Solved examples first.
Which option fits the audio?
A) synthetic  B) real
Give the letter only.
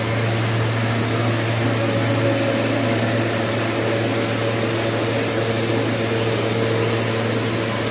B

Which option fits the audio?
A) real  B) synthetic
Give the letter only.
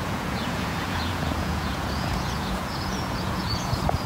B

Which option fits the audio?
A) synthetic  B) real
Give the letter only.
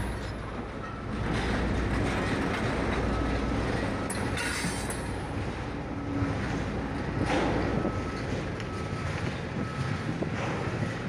B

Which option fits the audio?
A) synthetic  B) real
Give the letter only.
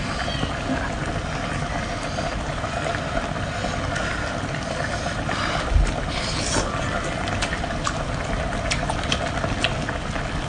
B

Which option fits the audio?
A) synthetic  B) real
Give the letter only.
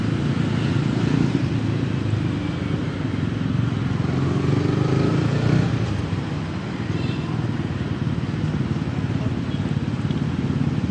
B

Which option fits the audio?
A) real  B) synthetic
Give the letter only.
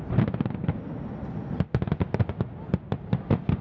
A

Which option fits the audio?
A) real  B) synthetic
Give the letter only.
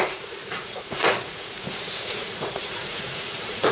B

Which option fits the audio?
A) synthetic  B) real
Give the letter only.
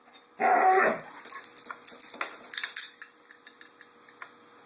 B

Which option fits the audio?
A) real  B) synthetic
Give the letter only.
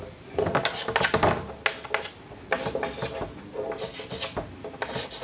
A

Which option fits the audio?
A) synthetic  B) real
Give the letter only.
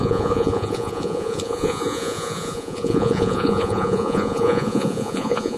A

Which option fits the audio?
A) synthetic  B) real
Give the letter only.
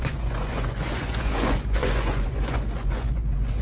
A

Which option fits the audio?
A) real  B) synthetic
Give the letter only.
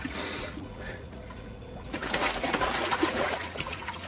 B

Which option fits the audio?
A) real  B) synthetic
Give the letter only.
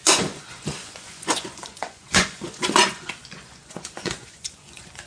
B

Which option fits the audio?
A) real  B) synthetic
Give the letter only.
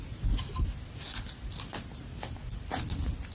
A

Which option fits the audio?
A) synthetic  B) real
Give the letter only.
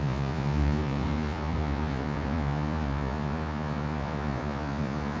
A